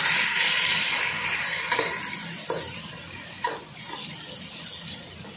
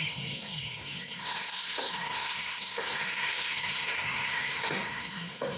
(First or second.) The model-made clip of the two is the second